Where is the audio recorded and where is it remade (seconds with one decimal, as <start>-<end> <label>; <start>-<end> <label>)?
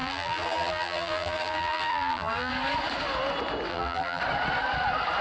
0.0-2.5 remade; 2.5-3.7 recorded; 3.7-4.2 remade; 4.2-5.2 recorded